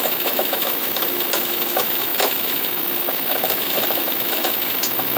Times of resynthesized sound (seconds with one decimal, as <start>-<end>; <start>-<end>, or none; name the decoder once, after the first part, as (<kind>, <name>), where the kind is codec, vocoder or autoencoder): 0.0-5.2 (autoencoder, DAC-VAE)